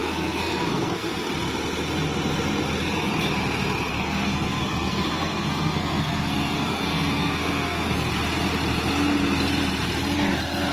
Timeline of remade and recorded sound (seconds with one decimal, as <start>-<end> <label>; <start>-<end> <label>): 0.0-1.1 remade; 1.1-3.9 recorded; 3.9-8.1 remade; 8.1-10.7 recorded